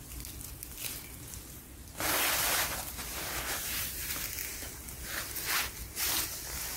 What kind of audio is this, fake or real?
real